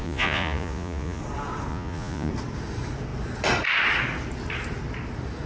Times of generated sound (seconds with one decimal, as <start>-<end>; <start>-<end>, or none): 0.0-1.2; 1.7-2.3